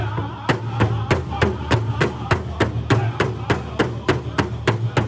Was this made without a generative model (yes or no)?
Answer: yes